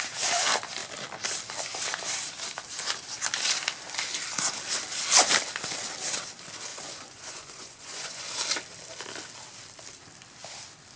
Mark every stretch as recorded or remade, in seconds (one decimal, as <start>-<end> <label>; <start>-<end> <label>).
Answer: 0.0-6.7 recorded; 6.7-8.3 remade; 8.3-11.0 recorded